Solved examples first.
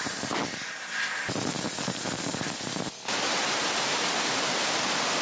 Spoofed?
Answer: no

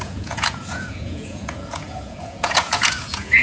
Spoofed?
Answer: yes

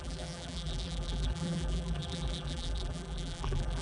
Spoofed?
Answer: yes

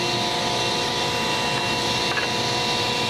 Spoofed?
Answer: no